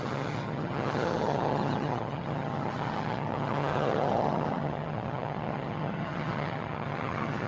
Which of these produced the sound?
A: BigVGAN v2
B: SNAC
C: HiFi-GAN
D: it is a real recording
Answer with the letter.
C